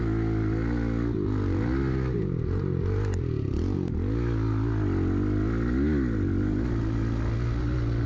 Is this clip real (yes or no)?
yes